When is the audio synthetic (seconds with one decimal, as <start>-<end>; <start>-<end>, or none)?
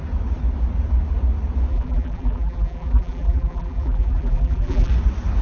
1.7-4.9